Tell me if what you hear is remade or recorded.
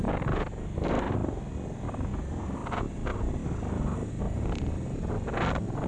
recorded